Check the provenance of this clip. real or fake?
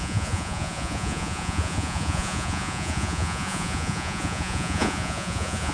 fake